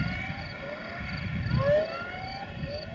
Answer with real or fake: real